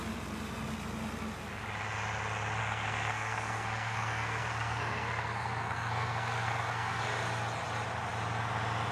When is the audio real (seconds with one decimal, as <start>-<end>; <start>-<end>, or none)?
0.0-2.6; 7.0-8.9